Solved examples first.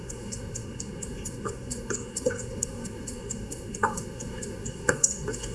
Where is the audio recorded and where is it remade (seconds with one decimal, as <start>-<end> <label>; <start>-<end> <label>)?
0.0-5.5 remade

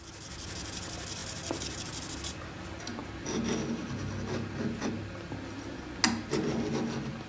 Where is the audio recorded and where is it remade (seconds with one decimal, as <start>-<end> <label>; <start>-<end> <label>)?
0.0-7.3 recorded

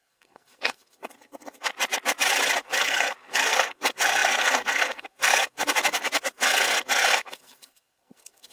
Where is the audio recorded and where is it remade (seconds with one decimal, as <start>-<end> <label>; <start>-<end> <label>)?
0.0-1.7 remade; 1.7-2.6 recorded; 2.6-8.5 remade

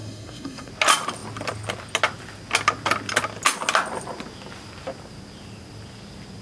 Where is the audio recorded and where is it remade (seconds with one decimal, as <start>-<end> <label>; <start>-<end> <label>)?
0.0-0.7 remade; 0.7-6.4 recorded